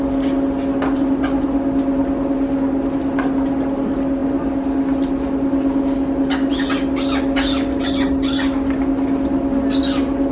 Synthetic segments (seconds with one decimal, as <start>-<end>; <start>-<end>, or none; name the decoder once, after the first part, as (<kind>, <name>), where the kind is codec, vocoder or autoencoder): none